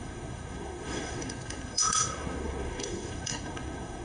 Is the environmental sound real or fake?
fake